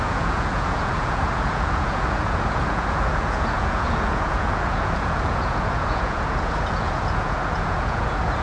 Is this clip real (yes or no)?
no